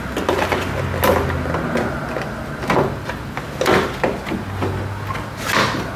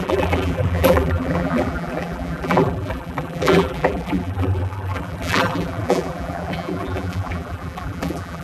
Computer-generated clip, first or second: second